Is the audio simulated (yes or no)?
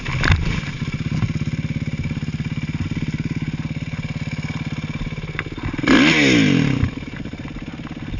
no